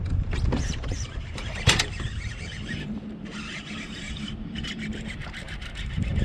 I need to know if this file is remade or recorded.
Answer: remade